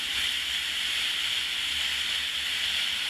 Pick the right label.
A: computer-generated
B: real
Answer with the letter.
B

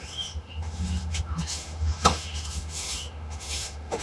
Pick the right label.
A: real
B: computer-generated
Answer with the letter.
B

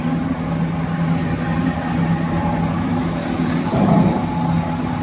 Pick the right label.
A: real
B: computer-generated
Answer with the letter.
A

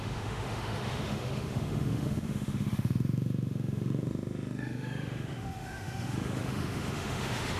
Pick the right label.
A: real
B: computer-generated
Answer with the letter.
B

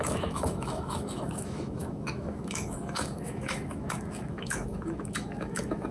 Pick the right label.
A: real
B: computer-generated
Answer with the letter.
B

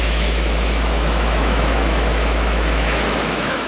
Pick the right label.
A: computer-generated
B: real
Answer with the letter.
A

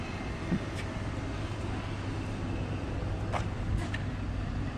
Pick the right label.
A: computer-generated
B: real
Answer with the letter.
B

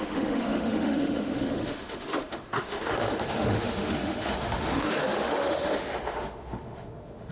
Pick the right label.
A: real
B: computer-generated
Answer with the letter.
B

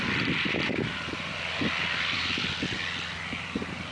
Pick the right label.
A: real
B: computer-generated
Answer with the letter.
A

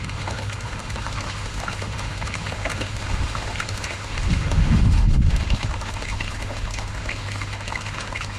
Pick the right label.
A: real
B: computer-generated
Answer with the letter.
B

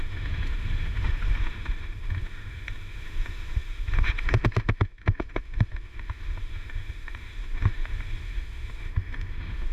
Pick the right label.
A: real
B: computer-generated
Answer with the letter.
B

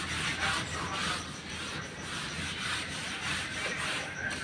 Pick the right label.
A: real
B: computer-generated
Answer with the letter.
A